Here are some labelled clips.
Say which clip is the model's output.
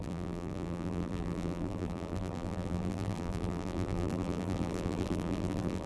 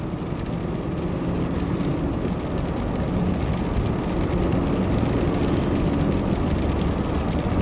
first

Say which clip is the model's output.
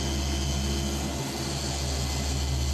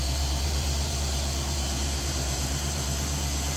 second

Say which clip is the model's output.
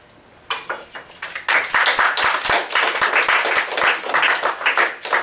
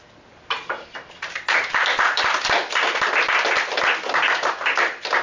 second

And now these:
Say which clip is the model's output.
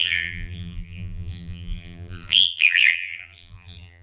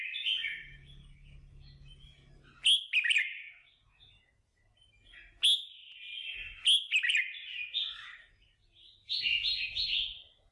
first